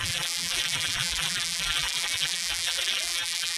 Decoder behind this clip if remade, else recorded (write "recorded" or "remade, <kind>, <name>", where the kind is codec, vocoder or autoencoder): remade, vocoder, BigVGAN v2